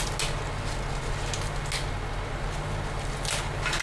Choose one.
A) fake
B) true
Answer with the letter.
B